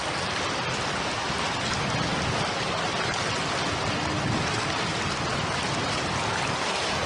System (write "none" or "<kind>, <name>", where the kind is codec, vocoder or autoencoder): none